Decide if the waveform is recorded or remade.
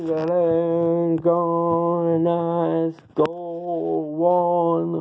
recorded